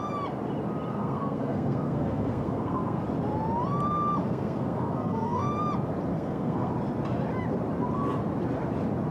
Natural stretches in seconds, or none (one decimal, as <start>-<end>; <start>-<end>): 0.0-0.9; 3.0-4.2; 5.5-6.1; 6.7-9.1